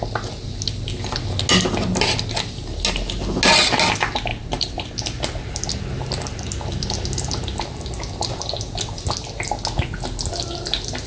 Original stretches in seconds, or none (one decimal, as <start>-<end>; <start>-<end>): 0.0-4.3; 4.9-11.1